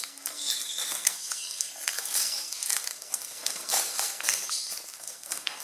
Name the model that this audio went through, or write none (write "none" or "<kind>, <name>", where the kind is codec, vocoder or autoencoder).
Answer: codec, SNAC